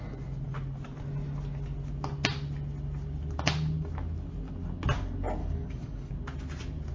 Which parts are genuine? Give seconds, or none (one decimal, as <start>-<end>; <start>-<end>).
0.0-5.4; 6.1-6.9